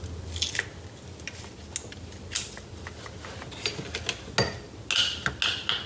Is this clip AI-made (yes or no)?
no